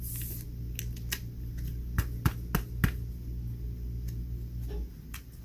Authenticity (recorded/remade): recorded